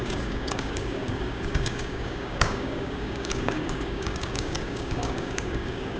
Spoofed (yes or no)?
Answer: yes